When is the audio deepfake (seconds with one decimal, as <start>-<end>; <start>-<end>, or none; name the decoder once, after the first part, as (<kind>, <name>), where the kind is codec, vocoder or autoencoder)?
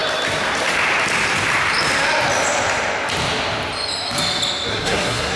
4.7-5.4 (codec, SNAC)